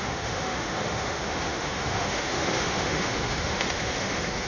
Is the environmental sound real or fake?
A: fake